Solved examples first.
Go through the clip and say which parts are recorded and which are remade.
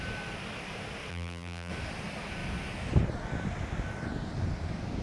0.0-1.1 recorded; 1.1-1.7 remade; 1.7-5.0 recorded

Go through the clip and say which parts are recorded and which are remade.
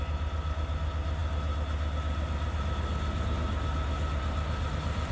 0.0-5.1 recorded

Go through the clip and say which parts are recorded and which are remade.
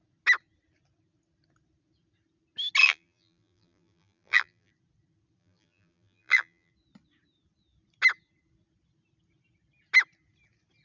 0.0-2.8 recorded; 2.8-4.7 remade; 4.7-5.4 recorded; 5.4-6.7 remade; 6.7-10.8 recorded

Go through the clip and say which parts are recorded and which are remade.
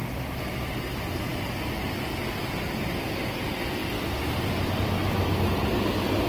0.0-6.3 recorded